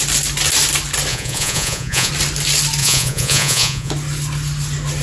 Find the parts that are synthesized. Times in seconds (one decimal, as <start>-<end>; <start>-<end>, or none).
1.1-2.1; 2.8-3.9